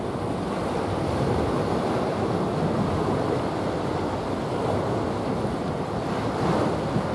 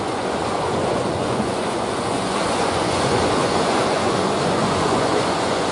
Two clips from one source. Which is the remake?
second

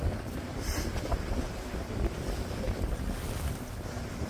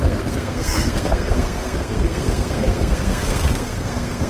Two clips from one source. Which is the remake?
second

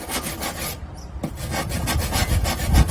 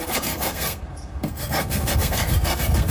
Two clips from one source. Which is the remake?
second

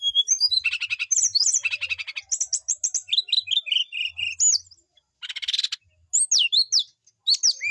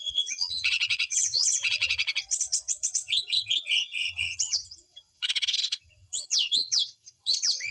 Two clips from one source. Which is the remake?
second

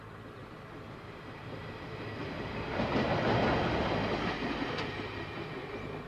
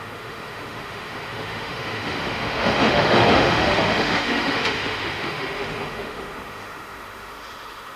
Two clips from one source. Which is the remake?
second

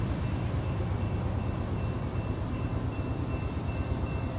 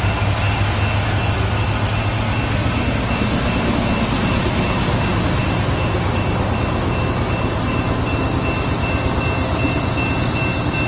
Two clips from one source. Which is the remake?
first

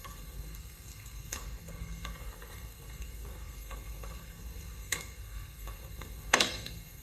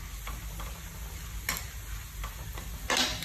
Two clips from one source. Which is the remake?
first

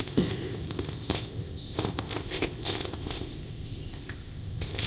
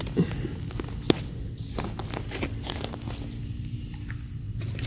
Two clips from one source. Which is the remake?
first